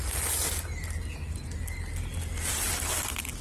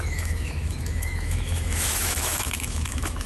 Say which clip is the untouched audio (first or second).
first